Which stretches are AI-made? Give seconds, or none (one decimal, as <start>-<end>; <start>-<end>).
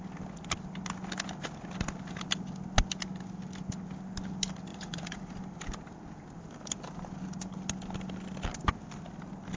4.7-5.3